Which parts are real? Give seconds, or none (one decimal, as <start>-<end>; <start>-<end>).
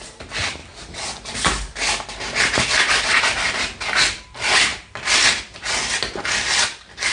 0.0-7.1